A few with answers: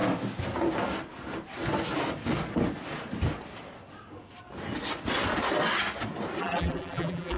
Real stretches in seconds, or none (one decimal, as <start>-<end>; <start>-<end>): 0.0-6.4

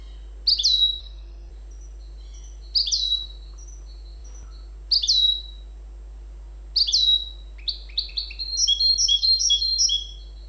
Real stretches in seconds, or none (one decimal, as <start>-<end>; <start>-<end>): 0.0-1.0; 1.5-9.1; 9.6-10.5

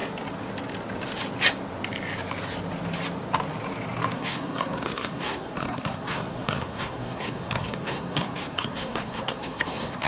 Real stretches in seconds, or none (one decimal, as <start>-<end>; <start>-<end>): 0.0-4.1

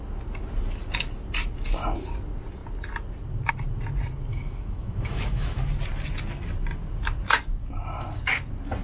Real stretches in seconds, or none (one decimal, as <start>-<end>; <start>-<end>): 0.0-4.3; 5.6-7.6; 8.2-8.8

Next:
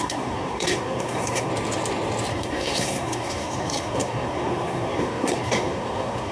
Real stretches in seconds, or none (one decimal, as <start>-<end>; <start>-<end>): 1.5-2.3